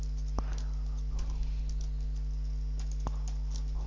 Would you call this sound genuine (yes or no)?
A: yes